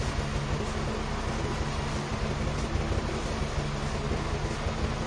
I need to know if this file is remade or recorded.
recorded